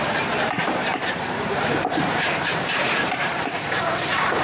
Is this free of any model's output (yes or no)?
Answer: no